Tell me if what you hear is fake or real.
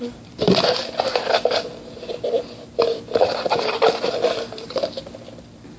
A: real